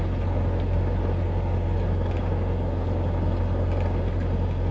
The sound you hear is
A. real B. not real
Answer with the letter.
A